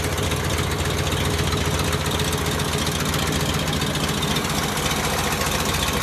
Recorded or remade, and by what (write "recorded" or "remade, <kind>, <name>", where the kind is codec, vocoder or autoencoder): recorded